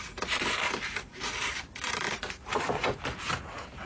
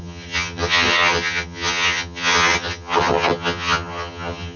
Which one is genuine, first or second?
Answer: first